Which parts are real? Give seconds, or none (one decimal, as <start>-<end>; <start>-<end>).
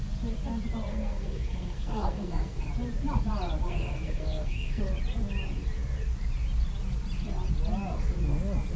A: 0.0-0.9; 2.7-3.6; 4.8-8.8